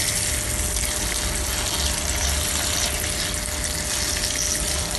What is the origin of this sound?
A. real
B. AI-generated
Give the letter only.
A